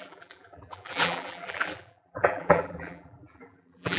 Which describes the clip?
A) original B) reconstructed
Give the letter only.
B